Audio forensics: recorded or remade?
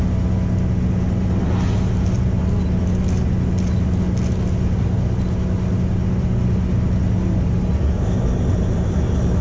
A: recorded